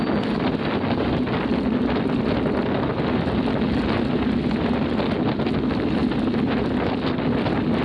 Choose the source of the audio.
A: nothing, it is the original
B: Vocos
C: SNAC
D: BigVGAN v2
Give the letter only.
A